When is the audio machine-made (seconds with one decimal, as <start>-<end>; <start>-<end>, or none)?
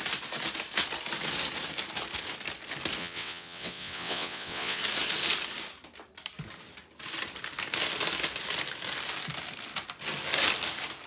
3.0-4.8